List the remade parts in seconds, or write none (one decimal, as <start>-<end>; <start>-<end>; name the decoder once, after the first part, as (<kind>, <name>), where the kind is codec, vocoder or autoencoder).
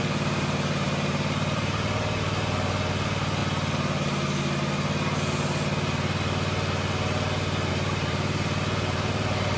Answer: 0.0-3.4 (vocoder, BigVGAN v2); 7.7-9.6